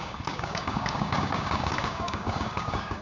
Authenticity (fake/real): fake